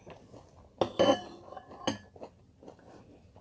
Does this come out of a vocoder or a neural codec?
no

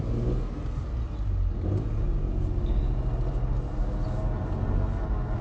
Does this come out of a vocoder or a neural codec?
no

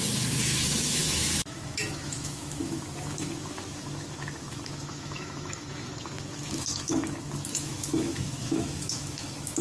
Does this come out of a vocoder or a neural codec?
yes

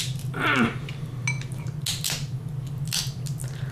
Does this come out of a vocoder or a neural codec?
no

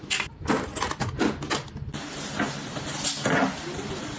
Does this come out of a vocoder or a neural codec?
no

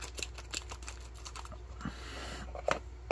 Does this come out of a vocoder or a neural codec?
no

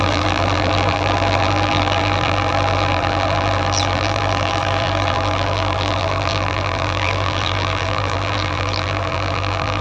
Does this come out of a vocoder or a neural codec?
yes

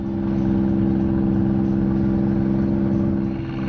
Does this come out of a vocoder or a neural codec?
no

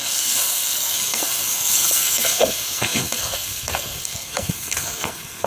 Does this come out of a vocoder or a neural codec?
yes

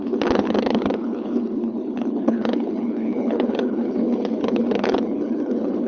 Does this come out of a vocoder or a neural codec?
yes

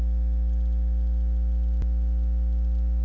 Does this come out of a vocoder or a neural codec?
no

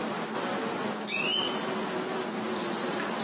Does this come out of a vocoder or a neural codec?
no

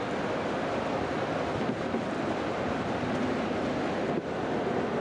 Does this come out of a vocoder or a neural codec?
no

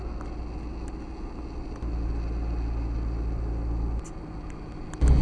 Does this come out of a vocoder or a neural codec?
no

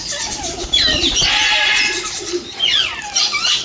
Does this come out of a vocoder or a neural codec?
yes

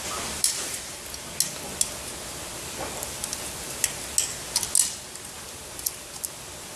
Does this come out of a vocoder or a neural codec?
no